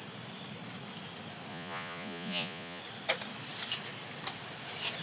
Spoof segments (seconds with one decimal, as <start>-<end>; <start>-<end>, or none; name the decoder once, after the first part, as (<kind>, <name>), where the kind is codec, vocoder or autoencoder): 1.5-2.8 (vocoder, Vocos)